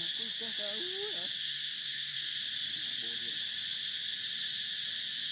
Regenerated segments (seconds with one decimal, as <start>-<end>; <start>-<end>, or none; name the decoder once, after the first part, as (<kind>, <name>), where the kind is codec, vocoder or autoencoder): 1.4-2.4 (codec, SNAC)